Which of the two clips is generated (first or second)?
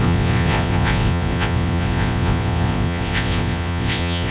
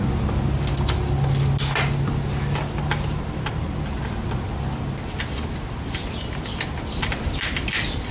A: first